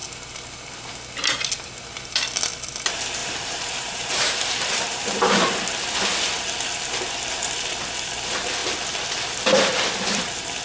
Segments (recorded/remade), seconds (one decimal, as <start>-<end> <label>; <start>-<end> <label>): 0.0-3.2 recorded; 3.2-5.6 remade; 5.6-10.6 recorded